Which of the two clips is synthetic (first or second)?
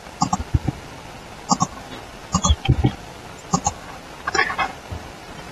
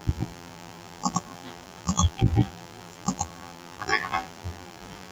second